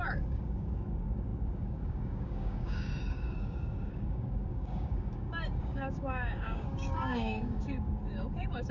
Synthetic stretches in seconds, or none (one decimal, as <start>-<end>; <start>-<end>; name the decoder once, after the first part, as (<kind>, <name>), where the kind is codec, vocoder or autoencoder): 0.0-8.7 (codec, DAC)

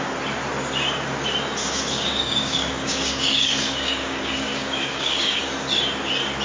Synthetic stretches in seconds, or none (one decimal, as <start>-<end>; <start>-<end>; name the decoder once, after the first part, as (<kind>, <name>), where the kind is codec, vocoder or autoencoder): 1.6-5.4 (codec, DAC)

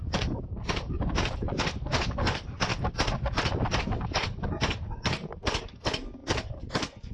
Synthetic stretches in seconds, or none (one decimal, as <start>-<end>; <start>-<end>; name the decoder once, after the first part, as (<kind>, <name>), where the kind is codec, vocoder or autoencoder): 0.0-2.7 (codec, DAC); 3.8-7.1